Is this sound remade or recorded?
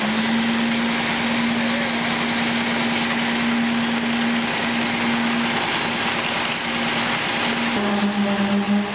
recorded